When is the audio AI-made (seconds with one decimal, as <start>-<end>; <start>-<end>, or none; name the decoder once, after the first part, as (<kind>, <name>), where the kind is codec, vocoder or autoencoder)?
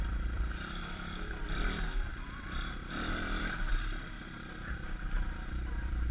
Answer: 0.0-6.1 (vocoder, BigVGAN v2)